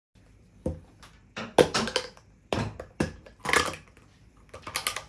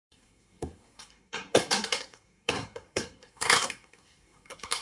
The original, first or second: first